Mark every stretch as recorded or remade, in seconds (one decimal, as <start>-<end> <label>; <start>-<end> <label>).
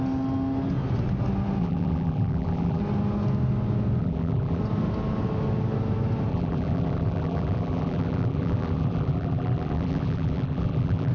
0.0-1.6 recorded; 1.6-2.8 remade; 2.8-4.0 recorded; 4.0-4.6 remade; 4.6-6.3 recorded; 6.3-11.1 remade